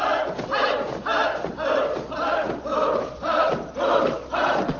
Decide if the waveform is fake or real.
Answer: real